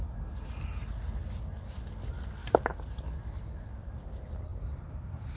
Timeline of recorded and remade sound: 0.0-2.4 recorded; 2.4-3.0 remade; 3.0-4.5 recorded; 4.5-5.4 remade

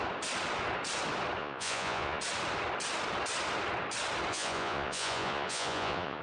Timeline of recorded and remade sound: 0.0-1.4 recorded; 1.4-2.2 remade; 2.2-4.3 recorded; 4.3-6.2 remade

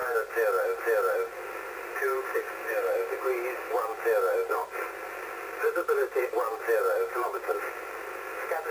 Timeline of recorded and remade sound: 0.0-8.7 recorded